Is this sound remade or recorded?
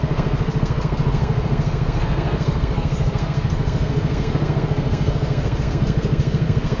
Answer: remade